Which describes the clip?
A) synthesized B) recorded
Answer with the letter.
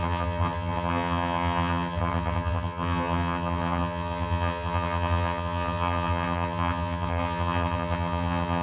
A